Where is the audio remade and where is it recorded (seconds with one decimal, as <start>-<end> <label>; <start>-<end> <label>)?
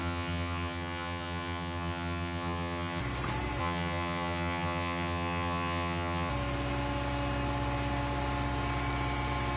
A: 0.0-3.0 remade; 3.0-3.6 recorded; 3.6-6.3 remade; 6.3-9.6 recorded